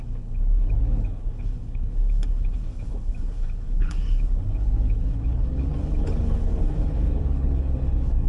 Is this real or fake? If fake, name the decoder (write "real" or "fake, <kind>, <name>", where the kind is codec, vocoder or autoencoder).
fake, codec, HILCodec